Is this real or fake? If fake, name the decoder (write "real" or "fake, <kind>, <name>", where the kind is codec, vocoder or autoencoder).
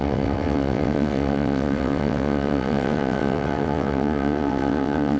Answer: fake, vocoder, WaveNeXt